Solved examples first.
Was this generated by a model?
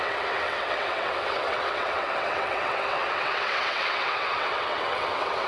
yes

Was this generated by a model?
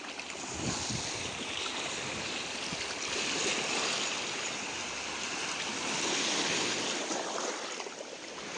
no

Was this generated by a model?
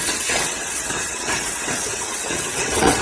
yes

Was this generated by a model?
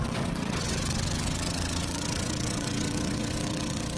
yes